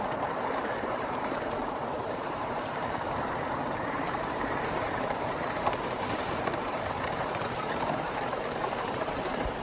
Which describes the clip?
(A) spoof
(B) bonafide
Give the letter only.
A